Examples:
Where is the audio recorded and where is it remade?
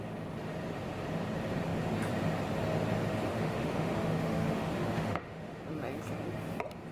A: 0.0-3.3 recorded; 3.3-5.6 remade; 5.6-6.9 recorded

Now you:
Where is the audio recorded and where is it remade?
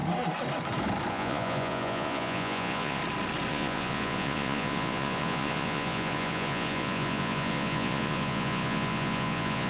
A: 0.0-1.1 recorded; 1.1-3.0 remade; 3.0-3.5 recorded; 3.5-9.7 remade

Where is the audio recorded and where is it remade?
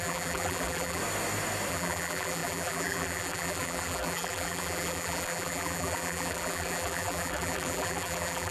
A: 0.0-1.0 remade; 1.0-1.7 recorded; 1.7-8.5 remade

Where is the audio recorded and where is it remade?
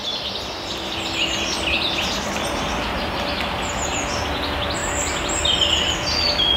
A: 0.0-6.6 recorded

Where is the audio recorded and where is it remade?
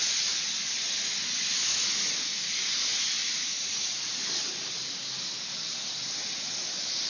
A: 0.0-3.2 recorded; 3.2-4.0 remade; 4.0-7.1 recorded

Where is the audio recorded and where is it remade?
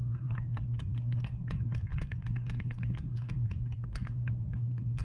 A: 0.0-5.0 remade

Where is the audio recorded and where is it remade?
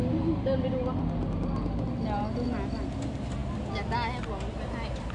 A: 0.0-5.1 recorded